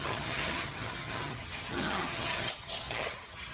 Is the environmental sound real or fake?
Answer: fake